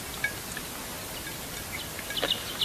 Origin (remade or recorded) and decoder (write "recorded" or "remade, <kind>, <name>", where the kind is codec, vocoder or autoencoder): recorded